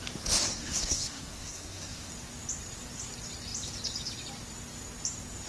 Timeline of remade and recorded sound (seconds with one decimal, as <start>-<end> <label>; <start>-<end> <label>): 0.0-0.5 recorded; 0.5-2.1 remade; 2.1-5.5 recorded

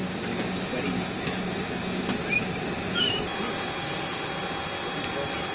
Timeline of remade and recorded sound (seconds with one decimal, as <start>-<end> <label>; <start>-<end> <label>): 0.0-5.5 recorded